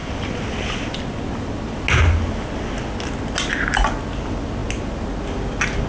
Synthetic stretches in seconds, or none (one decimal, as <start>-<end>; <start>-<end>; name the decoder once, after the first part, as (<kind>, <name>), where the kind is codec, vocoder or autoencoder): none